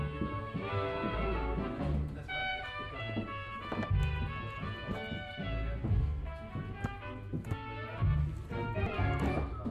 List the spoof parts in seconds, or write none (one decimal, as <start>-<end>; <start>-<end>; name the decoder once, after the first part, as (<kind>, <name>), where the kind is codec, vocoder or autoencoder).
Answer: 2.5-3.0 (vocoder, BigVGAN v2)